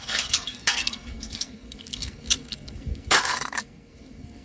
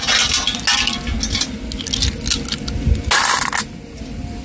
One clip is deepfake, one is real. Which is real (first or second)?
second